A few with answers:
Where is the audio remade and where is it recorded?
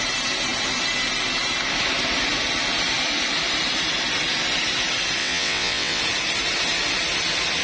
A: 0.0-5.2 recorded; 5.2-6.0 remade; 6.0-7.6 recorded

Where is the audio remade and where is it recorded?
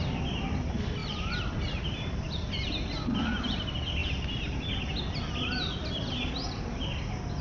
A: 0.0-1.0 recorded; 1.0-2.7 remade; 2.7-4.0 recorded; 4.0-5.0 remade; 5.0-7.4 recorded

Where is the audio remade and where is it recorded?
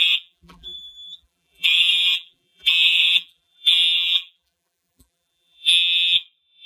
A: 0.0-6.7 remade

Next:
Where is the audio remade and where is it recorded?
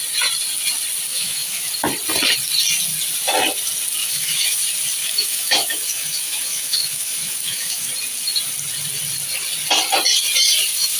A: 0.0-1.1 recorded; 1.1-1.7 remade; 1.7-4.0 recorded; 4.0-4.6 remade; 4.6-5.0 recorded; 5.0-7.9 remade; 7.9-11.0 recorded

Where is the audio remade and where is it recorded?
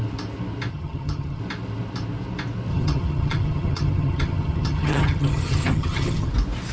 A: 0.0-0.7 recorded; 0.7-1.4 remade; 1.4-2.7 recorded; 2.7-6.3 remade; 6.3-6.7 recorded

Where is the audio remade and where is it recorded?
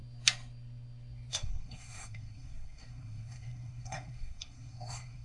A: 0.0-1.3 recorded; 1.3-5.2 remade